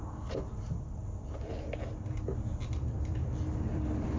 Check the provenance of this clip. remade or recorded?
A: remade